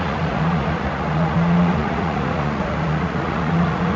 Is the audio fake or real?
fake